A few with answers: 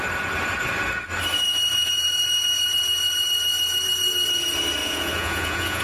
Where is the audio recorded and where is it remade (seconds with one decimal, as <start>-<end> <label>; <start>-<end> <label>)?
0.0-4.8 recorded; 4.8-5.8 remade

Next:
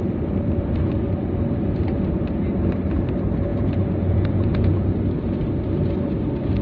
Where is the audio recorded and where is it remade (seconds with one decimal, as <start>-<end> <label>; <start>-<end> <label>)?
0.0-3.5 recorded; 3.5-4.9 remade; 4.9-6.6 recorded

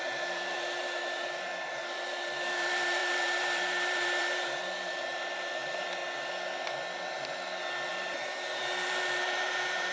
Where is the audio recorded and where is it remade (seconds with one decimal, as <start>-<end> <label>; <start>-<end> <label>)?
0.0-6.0 remade; 6.0-7.9 recorded; 7.9-9.9 remade

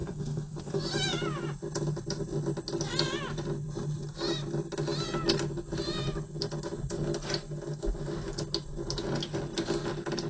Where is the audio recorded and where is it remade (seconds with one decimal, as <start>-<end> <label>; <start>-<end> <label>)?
0.0-0.8 remade; 0.8-10.3 recorded

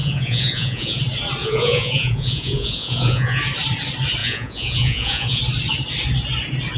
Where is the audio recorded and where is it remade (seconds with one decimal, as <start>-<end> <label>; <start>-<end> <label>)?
0.0-1.0 remade; 1.0-1.4 recorded; 1.4-3.4 remade; 3.4-4.2 recorded; 4.2-5.4 remade; 5.4-6.8 recorded

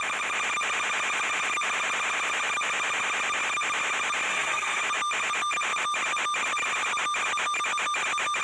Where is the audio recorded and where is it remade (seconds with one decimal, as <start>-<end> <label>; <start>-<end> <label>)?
0.0-4.3 recorded; 4.3-4.8 remade; 4.8-8.4 recorded